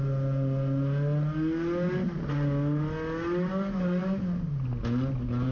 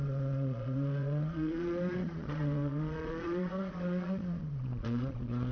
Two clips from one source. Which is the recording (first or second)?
first